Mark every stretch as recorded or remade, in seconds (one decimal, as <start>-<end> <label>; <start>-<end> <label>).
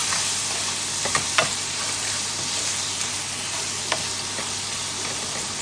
0.0-5.6 recorded